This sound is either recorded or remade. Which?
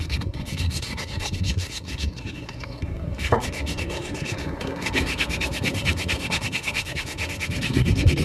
remade